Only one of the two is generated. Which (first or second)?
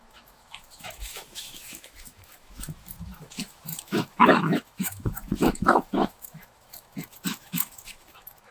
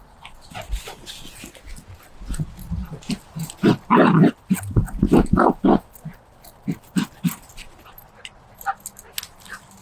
first